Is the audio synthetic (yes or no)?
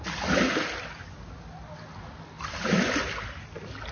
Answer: no